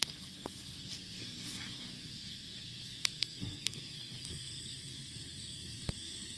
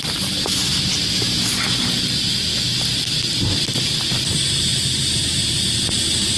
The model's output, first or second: first